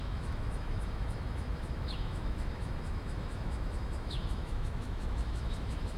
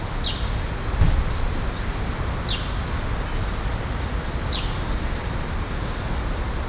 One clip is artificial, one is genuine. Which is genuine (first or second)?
second